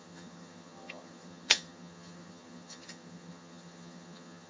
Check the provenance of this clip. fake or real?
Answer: fake